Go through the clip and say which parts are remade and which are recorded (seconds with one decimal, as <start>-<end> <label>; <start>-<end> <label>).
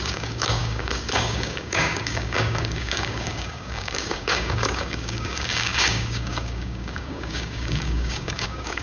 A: 0.0-8.8 remade